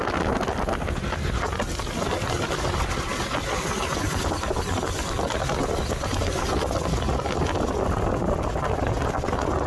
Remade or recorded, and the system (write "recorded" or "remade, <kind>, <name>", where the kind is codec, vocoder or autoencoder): recorded